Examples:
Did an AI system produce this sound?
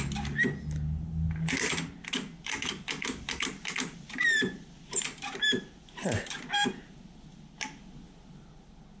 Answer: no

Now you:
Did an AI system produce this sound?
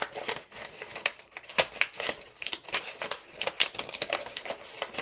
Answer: no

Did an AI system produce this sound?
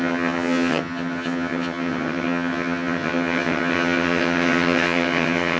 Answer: yes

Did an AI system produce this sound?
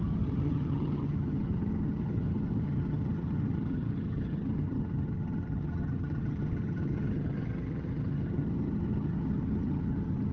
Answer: yes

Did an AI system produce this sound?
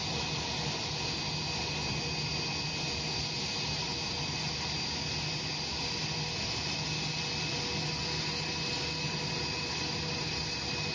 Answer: no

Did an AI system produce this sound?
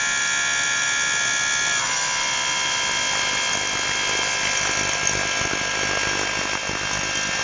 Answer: no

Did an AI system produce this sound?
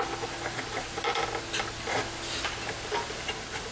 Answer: no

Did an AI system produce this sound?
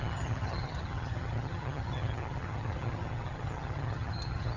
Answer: yes